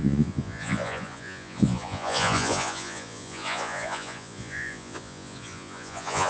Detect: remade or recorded remade